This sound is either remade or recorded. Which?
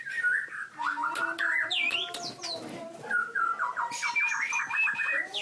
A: recorded